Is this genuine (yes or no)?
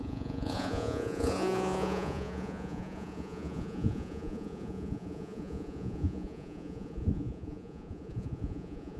no